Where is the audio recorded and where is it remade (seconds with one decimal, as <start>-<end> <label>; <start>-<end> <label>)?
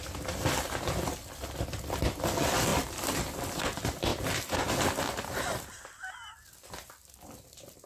0.0-7.9 recorded